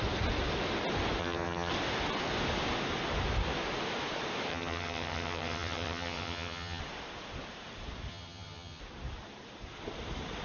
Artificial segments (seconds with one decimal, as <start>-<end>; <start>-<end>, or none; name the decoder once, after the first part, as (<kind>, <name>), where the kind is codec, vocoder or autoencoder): 1.2-1.7 (vocoder, HiFi-GAN); 4.5-6.8; 8.1-8.8